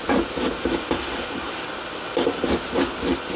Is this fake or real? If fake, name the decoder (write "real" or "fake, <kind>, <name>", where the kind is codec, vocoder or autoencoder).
fake, vocoder, BigVGAN v2